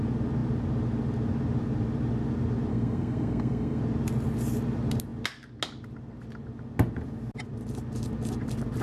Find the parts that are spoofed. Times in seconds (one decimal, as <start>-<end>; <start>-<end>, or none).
2.7-3.8